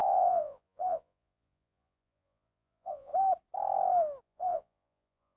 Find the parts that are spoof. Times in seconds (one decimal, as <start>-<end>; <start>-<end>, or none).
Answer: 0.0-3.1; 4.2-5.4